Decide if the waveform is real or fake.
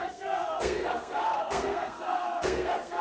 fake